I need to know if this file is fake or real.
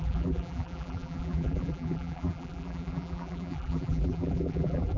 fake